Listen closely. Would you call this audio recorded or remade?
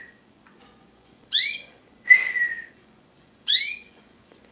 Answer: remade